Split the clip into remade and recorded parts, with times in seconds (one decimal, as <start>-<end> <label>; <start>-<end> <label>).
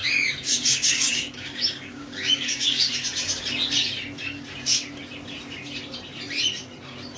0.0-2.9 remade; 2.9-7.2 recorded